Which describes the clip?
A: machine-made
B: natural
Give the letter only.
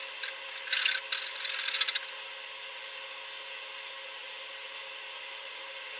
B